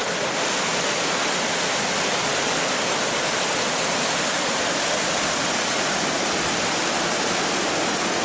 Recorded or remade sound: recorded